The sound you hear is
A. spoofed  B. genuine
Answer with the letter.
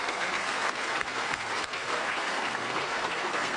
A